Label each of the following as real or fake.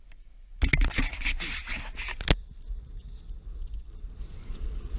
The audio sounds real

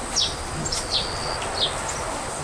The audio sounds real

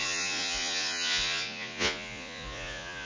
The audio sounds fake